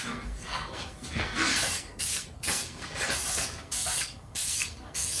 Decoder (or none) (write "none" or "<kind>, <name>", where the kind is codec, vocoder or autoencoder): codec, SNAC